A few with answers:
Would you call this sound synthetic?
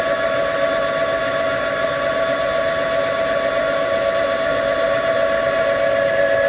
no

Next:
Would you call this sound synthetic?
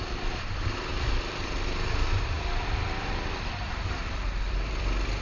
yes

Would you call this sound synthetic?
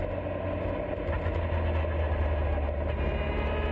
no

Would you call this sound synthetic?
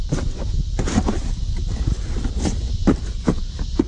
no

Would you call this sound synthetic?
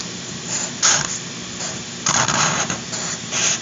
yes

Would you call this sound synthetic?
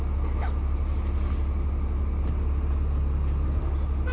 no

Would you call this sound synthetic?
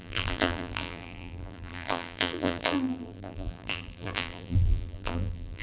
yes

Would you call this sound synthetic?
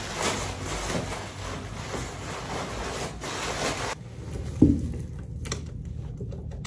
no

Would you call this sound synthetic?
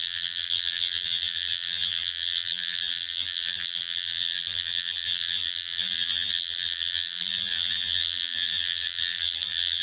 yes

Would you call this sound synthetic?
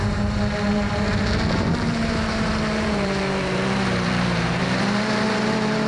yes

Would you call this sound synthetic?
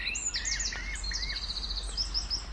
no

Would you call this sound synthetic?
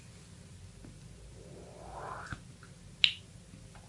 no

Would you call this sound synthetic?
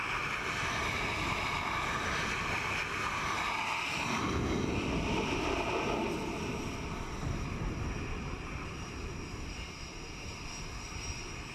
no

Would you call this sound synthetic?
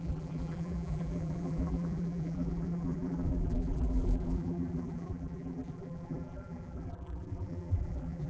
yes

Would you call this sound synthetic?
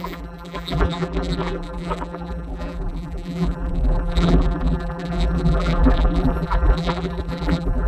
yes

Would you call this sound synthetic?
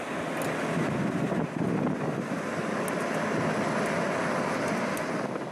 no